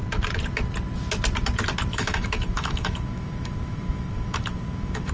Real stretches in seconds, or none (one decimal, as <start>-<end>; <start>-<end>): 0.0-1.9